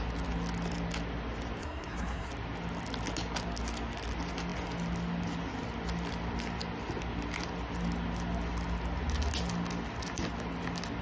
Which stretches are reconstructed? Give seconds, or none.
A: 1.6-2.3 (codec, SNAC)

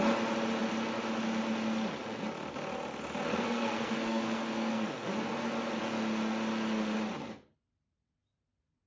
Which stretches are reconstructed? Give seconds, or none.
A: 3.3-4.9 (codec, SNAC)